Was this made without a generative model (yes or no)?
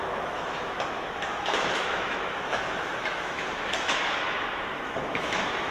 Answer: no